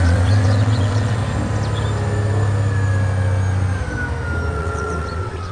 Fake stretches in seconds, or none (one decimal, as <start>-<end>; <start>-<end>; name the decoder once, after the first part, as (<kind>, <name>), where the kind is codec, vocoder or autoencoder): 0.0-1.2 (vocoder, WaveNeXt); 4.5-5.5